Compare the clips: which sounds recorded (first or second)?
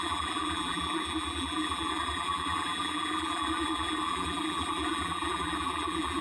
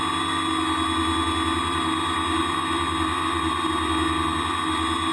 second